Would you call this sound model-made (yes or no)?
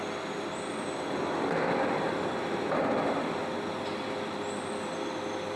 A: no